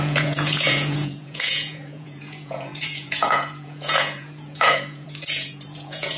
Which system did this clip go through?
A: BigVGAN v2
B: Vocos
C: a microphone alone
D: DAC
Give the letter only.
B